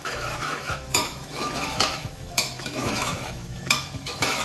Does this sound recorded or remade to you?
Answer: remade